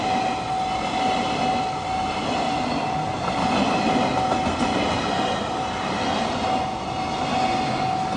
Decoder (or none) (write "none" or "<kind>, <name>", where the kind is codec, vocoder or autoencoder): none